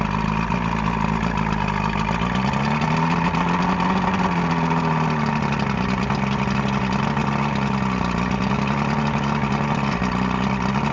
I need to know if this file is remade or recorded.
recorded